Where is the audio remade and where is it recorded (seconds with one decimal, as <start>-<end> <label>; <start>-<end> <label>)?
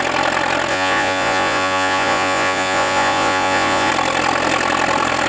0.0-0.7 recorded; 0.7-3.9 remade; 3.9-5.3 recorded